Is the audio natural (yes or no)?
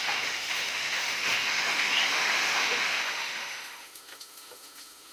no